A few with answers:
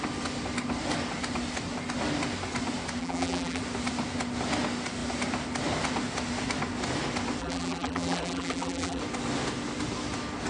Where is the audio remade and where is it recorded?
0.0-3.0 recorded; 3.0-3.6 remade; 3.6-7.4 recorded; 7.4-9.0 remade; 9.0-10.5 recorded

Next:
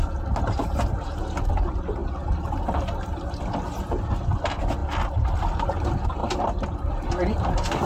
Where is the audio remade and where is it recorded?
0.0-7.9 recorded

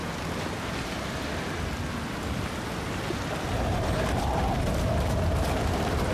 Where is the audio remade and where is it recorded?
0.0-3.7 recorded; 3.7-4.3 remade; 4.3-6.1 recorded

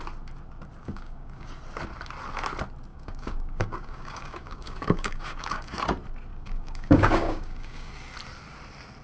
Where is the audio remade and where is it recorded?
0.0-0.8 recorded; 0.8-1.5 remade; 1.5-2.9 recorded; 2.9-5.8 remade; 5.8-6.3 recorded; 6.3-7.9 remade; 7.9-9.0 recorded

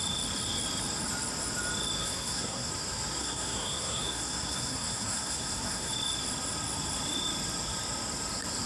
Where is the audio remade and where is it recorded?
0.0-2.0 recorded; 2.0-2.7 remade; 2.7-3.2 recorded; 3.2-5.9 remade; 5.9-8.7 recorded